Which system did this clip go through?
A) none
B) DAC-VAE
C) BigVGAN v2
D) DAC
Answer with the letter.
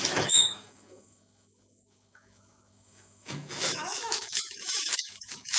B